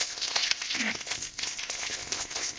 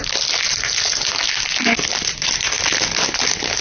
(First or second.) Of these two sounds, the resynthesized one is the first